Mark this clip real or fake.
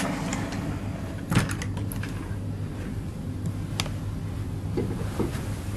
real